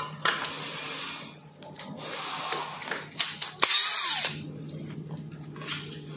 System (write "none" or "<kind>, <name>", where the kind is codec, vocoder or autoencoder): none